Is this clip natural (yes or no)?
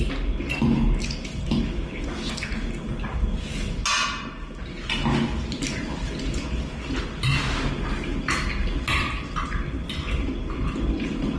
yes